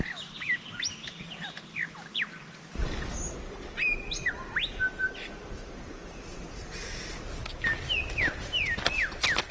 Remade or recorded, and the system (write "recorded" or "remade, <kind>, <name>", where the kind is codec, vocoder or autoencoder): recorded